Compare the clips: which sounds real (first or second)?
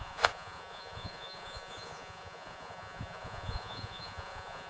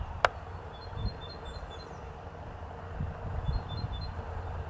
second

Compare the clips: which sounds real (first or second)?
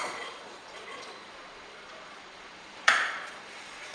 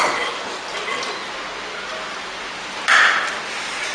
second